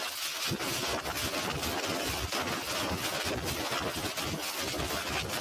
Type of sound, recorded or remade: recorded